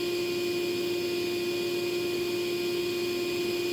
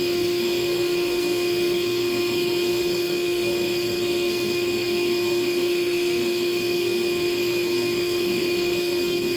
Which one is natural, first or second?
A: first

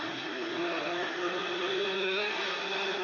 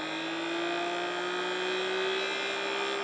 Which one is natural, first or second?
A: second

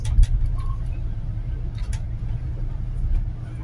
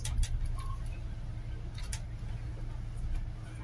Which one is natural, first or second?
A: second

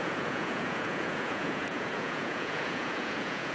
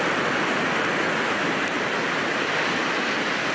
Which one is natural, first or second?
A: second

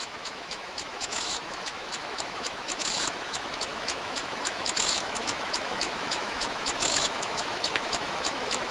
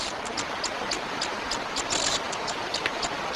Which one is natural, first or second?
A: second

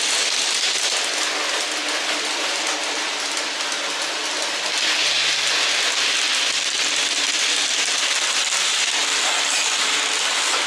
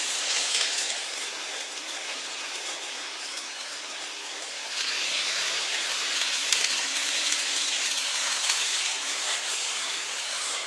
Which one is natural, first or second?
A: first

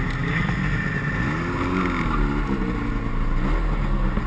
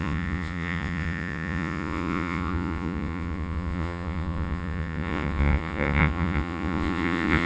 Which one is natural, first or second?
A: first